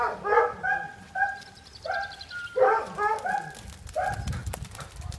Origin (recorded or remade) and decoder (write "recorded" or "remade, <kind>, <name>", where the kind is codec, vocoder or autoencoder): recorded